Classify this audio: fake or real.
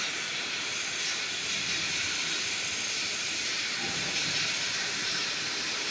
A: fake